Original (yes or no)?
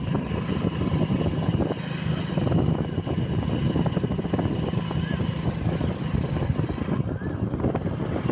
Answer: yes